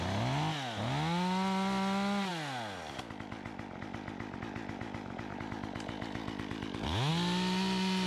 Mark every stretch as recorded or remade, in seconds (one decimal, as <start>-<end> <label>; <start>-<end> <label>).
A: 0.0-8.1 recorded